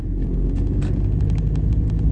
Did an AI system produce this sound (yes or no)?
no